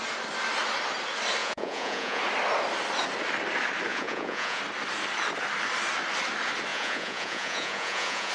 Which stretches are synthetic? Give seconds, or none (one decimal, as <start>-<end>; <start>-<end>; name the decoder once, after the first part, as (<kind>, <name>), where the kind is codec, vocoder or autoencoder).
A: 1.4-2.2 (vocoder, Vocos); 3.9-4.6; 6.7-8.3